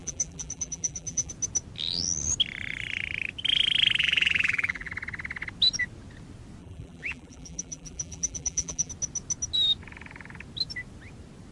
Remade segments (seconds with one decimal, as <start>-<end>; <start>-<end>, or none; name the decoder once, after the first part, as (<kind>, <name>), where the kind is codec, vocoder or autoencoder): 0.0-1.3 (vocoder, BigVGAN v2); 4.0-4.9; 6.6-8.9